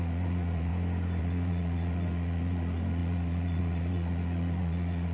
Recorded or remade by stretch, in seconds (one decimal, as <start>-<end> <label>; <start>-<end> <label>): 0.0-0.7 remade; 0.7-1.2 recorded; 1.2-5.1 remade